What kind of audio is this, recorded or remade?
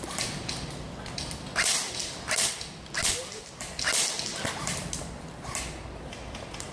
recorded